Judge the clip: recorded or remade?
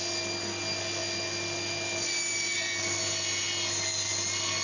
recorded